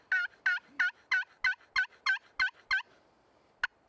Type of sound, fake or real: real